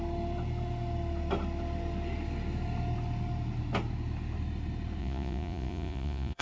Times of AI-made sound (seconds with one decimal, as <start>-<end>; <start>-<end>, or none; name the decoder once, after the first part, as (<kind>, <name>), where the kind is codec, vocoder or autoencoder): 5.0-6.4 (vocoder, Vocos)